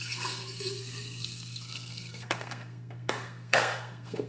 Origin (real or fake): fake